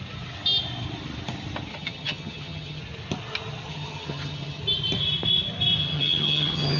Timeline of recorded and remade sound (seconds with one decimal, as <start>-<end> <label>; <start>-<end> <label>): 0.0-1.7 recorded; 1.7-2.8 remade; 2.8-3.7 recorded; 3.7-4.6 remade; 4.6-5.8 recorded; 5.8-6.8 remade